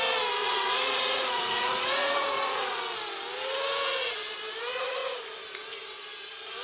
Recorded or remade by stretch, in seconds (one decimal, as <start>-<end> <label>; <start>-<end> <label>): 0.0-0.4 recorded; 0.4-2.8 remade; 2.8-6.6 recorded